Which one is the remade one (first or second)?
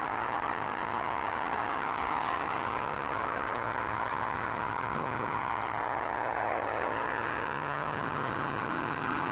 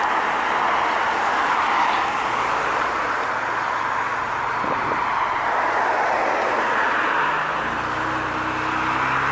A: first